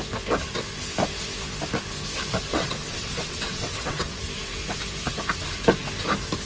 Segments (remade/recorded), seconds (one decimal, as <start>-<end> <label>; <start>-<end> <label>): 0.0-2.5 recorded; 2.5-4.2 remade; 4.2-6.5 recorded

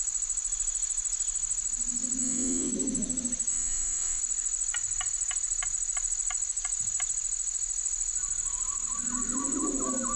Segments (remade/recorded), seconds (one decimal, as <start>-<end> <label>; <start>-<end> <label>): 0.0-2.2 recorded; 2.2-2.7 remade; 2.7-3.5 recorded; 3.5-4.2 remade; 4.2-10.2 recorded

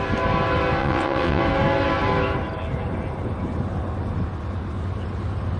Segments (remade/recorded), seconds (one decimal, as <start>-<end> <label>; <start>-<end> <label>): 0.0-0.8 recorded; 0.8-1.4 remade; 1.4-5.6 recorded

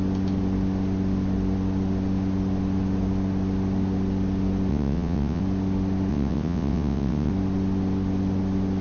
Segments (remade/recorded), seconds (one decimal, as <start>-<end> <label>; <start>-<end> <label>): 0.0-4.7 recorded; 4.7-5.4 remade; 5.4-6.1 recorded; 6.1-7.3 remade; 7.3-8.8 recorded

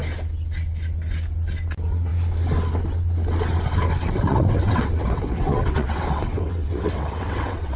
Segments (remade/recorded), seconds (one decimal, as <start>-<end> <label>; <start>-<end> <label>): 0.0-4.3 recorded; 4.3-7.8 remade

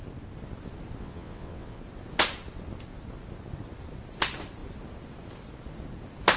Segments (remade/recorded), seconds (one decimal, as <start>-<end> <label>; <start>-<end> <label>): 0.0-1.0 recorded; 1.0-1.8 remade; 1.8-6.4 recorded